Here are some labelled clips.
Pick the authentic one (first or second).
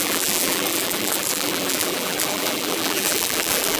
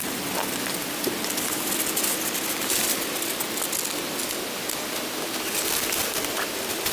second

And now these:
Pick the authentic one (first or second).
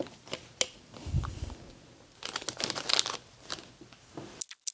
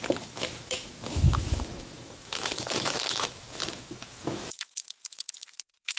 first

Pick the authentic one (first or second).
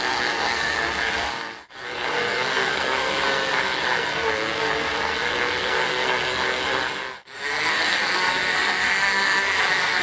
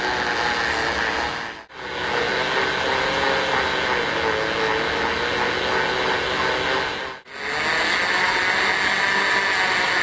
second